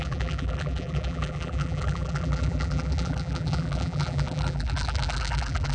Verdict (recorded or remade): remade